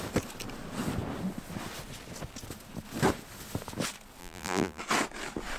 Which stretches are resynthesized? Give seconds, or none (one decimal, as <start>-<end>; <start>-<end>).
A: 4.2-4.8